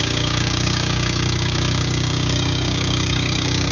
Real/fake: fake